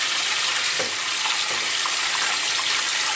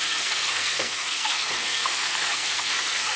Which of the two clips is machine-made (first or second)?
second